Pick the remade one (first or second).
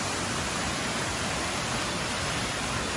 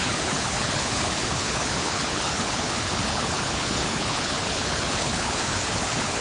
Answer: second